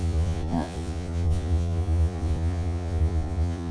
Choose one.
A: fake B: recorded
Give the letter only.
A